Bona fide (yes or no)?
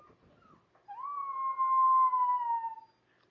yes